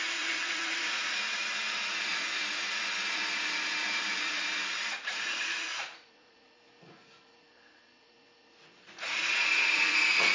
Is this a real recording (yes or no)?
no